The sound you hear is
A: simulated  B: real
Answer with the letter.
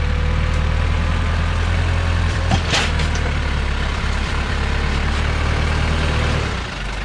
A